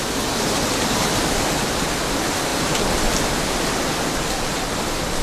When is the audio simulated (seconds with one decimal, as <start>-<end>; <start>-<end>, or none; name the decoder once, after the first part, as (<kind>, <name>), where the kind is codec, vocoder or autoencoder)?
2.5-3.2 (vocoder, BigVGAN v2)